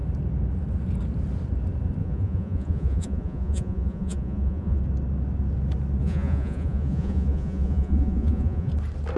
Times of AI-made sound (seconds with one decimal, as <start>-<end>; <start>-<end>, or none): 2.0-4.8; 6.0-8.7